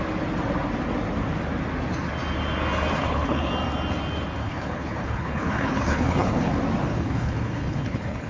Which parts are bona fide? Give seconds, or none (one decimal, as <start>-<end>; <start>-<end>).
0.0-3.0; 3.5-4.4; 6.5-6.9